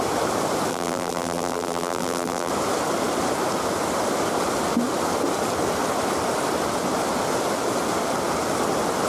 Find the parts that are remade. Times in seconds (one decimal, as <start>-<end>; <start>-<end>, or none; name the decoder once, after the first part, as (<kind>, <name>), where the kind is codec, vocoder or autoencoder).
0.7-2.5 (vocoder, BigVGAN v2)